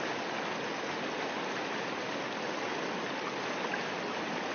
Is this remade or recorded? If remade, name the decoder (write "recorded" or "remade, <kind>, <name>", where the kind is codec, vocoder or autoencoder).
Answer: recorded